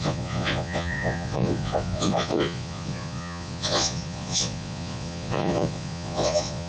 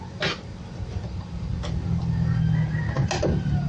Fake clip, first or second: first